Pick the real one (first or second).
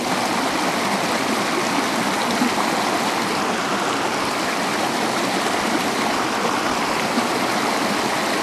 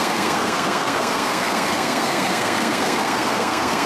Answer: first